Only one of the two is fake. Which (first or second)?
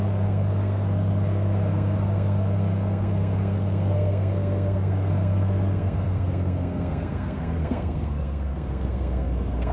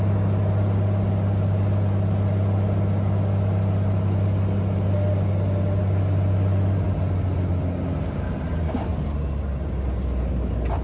first